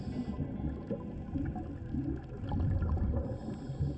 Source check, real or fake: real